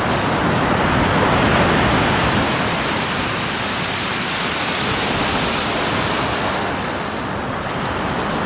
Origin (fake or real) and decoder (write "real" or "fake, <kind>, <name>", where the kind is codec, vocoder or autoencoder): real